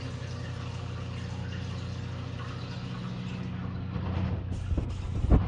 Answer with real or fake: real